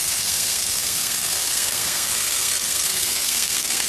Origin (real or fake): fake